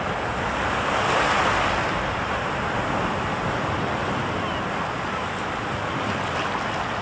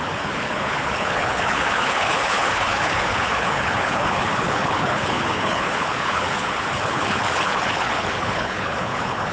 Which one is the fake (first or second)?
second